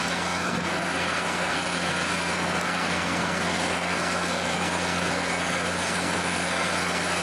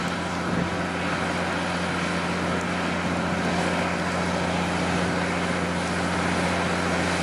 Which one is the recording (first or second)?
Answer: second